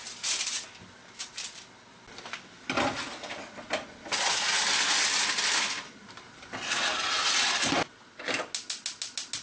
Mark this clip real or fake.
real